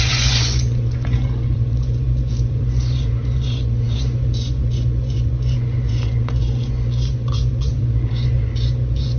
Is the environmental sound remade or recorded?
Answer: remade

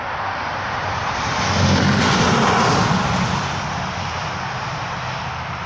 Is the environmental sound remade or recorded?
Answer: recorded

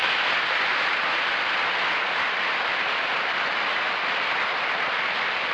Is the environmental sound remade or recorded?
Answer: recorded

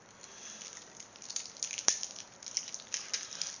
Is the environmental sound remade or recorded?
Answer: recorded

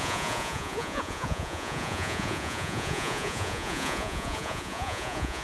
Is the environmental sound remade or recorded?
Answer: remade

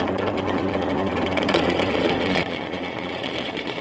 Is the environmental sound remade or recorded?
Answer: remade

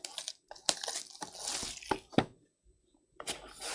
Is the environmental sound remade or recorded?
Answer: recorded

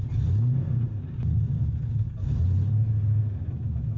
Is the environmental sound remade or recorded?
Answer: recorded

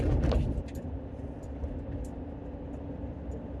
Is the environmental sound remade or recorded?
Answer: recorded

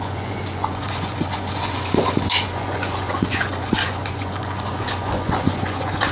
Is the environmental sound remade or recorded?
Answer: remade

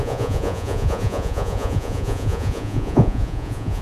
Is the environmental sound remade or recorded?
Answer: remade